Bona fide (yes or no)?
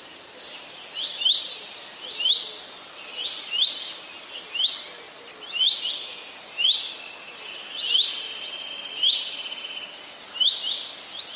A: yes